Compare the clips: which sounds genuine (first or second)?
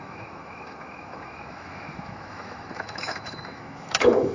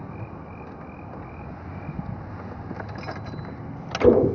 second